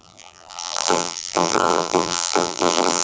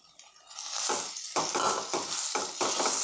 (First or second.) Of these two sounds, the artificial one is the first